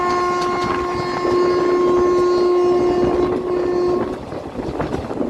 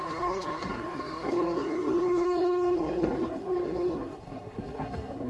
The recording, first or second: first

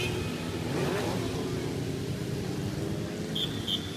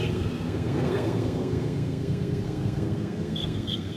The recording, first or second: first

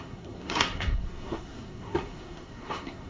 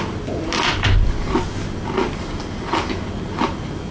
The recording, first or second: second